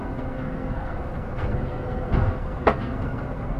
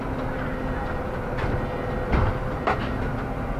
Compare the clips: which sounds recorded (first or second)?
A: second